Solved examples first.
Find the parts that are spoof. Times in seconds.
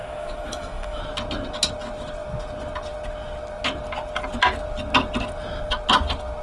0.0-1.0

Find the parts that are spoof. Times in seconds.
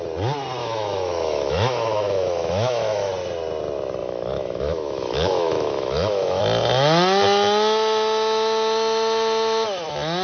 0.6-3.1; 4.0-6.4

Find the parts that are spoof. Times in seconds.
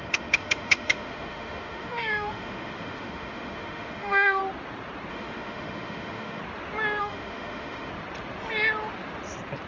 0.0-4.4; 5.1-6.4; 7.0-7.9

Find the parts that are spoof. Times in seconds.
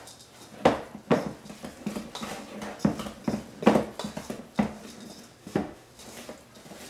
5.4-5.9